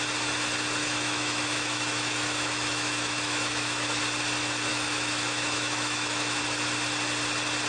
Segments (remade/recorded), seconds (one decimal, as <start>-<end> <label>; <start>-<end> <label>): 0.0-0.8 recorded; 0.8-4.0 remade; 4.0-4.7 recorded; 4.7-6.4 remade; 6.4-7.7 recorded

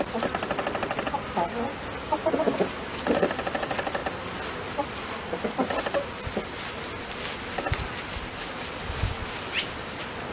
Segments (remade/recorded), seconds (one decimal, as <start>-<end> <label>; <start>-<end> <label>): 0.0-10.3 recorded

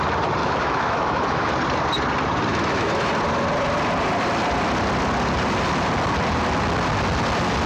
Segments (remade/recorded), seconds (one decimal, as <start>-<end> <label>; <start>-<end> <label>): 0.0-0.4 recorded; 0.4-1.5 remade; 1.5-2.5 recorded; 2.5-3.1 remade; 3.1-7.7 recorded

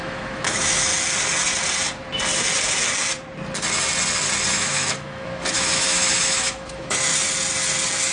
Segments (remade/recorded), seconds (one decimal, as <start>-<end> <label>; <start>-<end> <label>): 0.0-0.9 remade; 0.9-4.5 recorded; 4.5-7.1 remade; 7.1-8.1 recorded

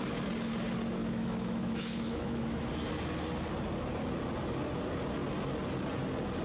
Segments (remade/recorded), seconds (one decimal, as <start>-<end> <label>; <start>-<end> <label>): 0.0-1.0 recorded; 1.0-2.7 remade; 2.7-6.4 recorded

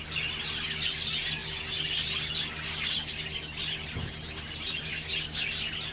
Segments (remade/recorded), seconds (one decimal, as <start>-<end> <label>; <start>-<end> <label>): 0.0-5.9 recorded

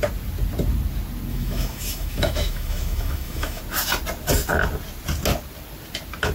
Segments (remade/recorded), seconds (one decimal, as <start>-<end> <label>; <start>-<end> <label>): 0.0-1.3 recorded; 1.3-3.6 remade; 3.6-6.3 recorded